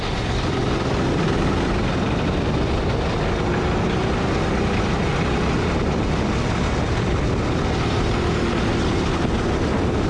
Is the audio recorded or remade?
recorded